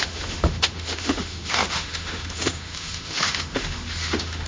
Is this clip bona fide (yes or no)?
no